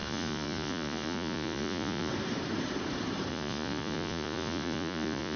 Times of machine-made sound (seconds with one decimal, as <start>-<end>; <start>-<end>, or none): 0.0-2.1; 3.3-5.4